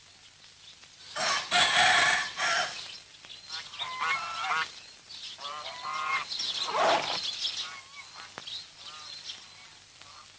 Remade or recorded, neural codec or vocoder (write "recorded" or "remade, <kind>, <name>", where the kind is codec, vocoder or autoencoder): recorded